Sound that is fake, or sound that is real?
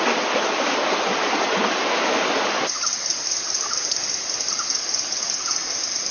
real